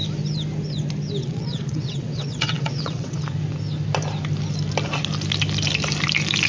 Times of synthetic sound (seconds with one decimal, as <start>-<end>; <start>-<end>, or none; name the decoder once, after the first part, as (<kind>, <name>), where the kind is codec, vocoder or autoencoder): 1.2-3.2 (vocoder, WaveNeXt)